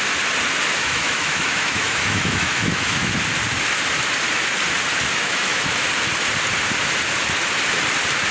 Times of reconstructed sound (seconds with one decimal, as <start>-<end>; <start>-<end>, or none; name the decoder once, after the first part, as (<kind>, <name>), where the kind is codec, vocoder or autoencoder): 0.7-3.1 (autoencoder, DAC-VAE); 5.1-5.9